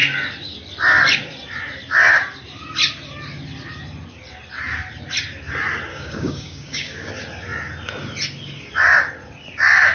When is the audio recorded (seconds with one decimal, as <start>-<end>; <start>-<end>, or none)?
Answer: 0.0-5.9; 7.1-9.9